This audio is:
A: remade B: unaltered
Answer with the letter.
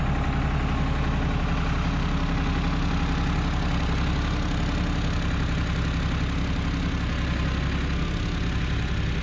B